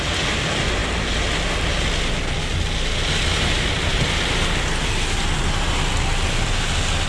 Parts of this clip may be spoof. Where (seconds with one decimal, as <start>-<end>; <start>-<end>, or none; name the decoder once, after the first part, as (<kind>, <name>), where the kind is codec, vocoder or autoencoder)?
none